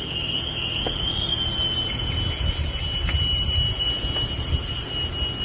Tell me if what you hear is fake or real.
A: real